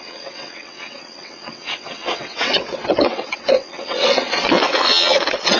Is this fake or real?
fake